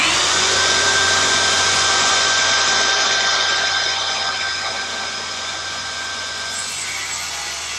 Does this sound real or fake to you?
fake